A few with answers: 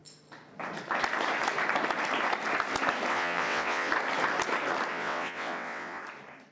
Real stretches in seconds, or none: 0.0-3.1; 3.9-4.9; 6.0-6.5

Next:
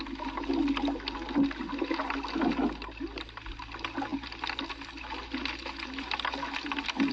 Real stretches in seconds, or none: 0.0-7.1

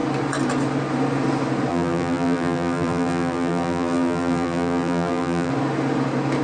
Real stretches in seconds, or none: 0.0-1.7; 5.5-6.4